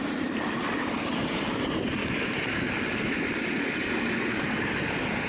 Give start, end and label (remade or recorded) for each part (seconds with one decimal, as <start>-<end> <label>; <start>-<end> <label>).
0.0-5.3 remade